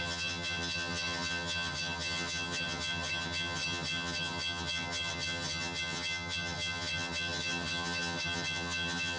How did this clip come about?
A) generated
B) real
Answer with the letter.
A